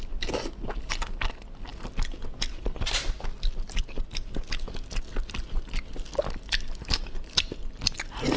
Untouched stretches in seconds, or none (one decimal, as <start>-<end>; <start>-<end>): 0.0-8.4